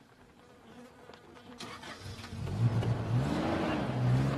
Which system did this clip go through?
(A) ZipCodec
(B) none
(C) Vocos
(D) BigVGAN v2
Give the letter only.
B